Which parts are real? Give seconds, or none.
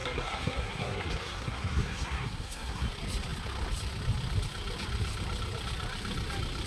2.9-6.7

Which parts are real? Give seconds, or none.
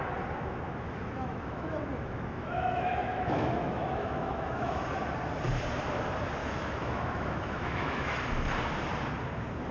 0.0-0.5; 4.8-6.4; 8.2-9.7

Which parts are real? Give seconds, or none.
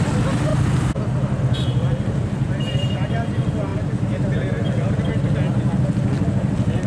0.0-6.9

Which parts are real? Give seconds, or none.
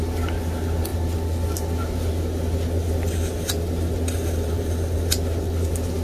0.0-6.0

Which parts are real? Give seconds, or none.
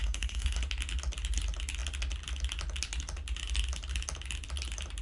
0.6-5.0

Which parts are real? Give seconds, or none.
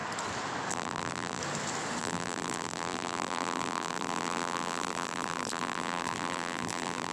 0.0-0.7; 1.4-2.0